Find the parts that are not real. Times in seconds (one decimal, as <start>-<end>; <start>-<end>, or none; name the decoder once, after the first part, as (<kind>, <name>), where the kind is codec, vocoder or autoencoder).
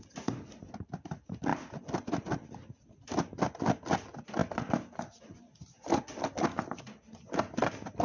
none